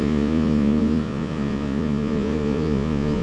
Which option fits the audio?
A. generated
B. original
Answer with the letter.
A